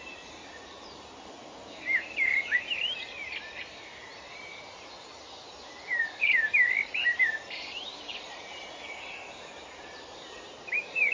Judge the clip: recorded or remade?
remade